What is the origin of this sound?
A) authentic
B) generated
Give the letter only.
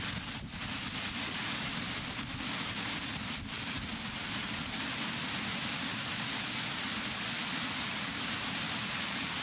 A